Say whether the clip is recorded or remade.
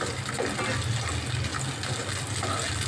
recorded